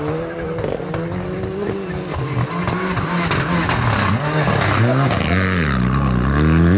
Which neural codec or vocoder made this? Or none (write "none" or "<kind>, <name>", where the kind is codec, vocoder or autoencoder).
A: none